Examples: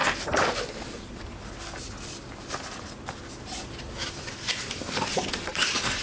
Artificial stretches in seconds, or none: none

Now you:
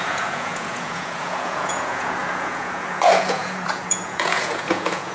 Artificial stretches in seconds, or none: 0.0-5.1 (vocoder, Vocos)